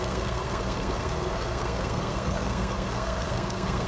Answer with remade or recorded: remade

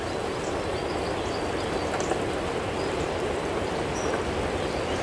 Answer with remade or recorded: recorded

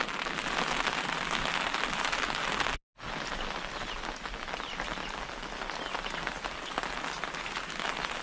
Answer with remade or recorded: recorded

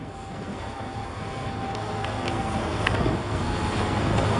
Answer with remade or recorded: remade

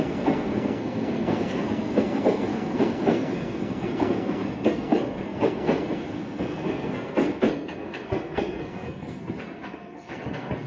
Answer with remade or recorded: remade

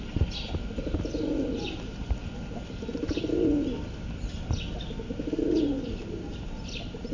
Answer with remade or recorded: recorded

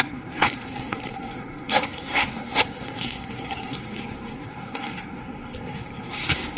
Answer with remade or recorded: remade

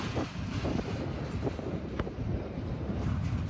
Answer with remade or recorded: recorded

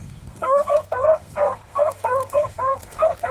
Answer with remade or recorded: remade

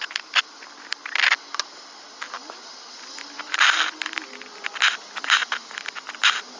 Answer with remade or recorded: recorded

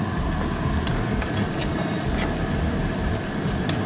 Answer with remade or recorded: recorded